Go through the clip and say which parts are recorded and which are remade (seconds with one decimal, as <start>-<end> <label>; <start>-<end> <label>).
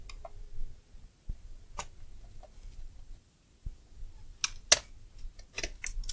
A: 0.0-6.1 recorded